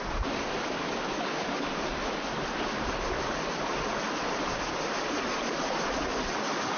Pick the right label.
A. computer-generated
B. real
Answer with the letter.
B